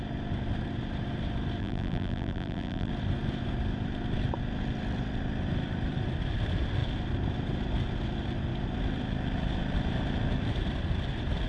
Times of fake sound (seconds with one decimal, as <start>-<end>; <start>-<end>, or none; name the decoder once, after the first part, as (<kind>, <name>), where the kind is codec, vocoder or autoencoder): 1.6-2.9 (vocoder, BigVGAN v2)